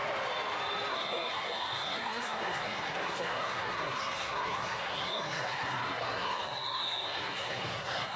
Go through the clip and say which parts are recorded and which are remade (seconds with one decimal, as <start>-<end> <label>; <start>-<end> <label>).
0.0-0.9 recorded; 0.9-8.2 remade